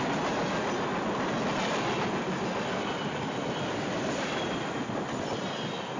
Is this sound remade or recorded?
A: recorded